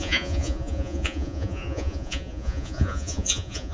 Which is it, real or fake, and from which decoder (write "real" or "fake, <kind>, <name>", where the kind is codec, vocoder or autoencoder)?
fake, vocoder, Vocos